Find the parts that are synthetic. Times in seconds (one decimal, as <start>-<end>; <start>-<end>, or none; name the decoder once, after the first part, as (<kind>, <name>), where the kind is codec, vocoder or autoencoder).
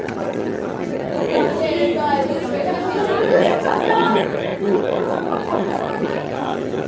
0.0-1.5 (vocoder, HiFi-GAN); 3.2-6.9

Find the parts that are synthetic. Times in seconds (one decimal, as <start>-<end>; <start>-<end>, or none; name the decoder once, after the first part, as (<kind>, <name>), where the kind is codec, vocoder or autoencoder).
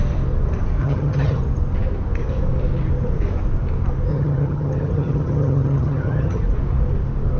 0.8-1.4 (vocoder, HiFi-GAN); 4.1-6.4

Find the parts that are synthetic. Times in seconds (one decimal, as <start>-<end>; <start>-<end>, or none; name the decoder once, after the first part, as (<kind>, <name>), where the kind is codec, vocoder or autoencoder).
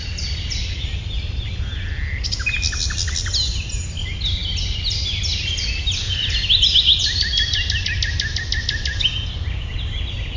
none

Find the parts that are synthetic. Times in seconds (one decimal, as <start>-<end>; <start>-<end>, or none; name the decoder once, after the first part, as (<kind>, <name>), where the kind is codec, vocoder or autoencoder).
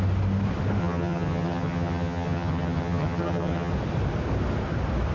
0.8-3.7 (vocoder, HiFi-GAN)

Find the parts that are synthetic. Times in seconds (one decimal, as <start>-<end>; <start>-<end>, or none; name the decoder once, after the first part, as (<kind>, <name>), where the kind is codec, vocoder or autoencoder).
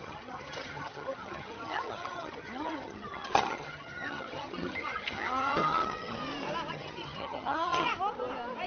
0.0-6.2 (vocoder, HiFi-GAN); 6.7-7.9